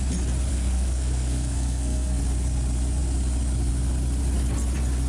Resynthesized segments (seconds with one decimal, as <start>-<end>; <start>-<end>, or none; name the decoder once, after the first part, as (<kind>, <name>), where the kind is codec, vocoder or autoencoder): 0.5-2.2 (codec, SNAC)